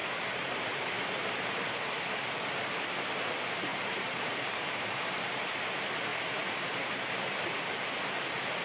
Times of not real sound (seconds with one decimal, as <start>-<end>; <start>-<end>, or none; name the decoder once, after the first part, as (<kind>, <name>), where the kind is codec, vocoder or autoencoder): 0.0-1.5 (vocoder, BigVGAN v2); 3.7-5.3

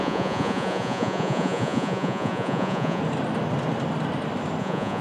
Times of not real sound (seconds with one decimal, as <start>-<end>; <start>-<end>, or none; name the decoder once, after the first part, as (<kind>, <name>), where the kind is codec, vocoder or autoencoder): 0.0-3.0 (vocoder, Vocos); 4.6-5.0